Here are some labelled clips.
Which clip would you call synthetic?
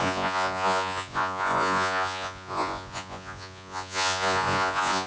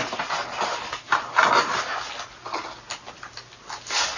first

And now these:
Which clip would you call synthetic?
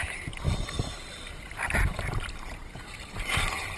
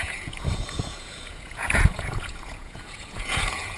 second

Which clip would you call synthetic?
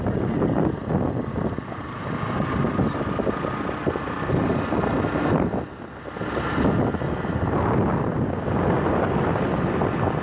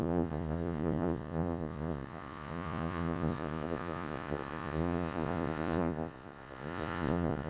second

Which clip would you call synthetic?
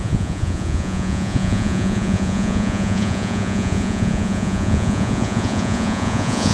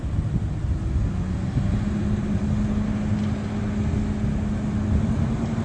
first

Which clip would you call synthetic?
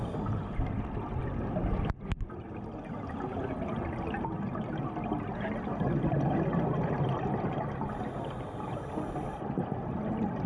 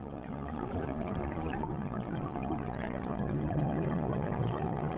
second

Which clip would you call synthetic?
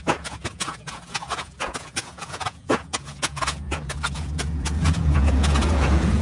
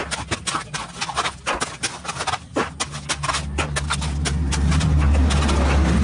first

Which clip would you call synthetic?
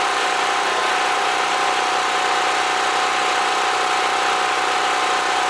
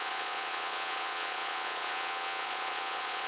second